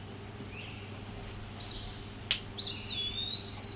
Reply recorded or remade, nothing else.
recorded